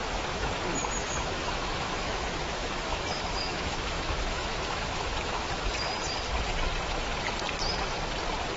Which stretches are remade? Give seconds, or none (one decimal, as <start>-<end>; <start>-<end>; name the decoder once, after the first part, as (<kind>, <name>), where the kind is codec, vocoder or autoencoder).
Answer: 0.0-0.5 (autoencoder, DAC-VAE); 1.0-5.5